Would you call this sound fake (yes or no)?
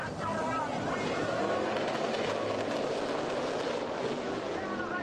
no